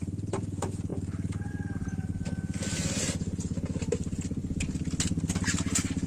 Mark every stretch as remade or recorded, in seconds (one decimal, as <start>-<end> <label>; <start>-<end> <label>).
0.0-0.9 recorded; 0.9-1.5 remade; 1.5-6.1 recorded